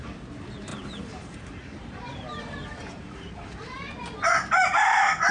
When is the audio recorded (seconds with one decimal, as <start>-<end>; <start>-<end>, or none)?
0.0-0.7; 3.9-5.3